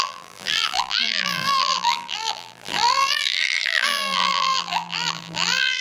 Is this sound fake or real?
fake